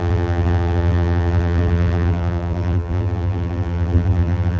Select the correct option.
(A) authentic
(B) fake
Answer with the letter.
B